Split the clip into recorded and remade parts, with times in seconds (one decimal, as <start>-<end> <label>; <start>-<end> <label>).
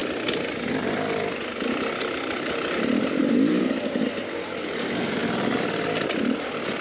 0.0-3.2 recorded; 3.2-3.8 remade; 3.8-6.8 recorded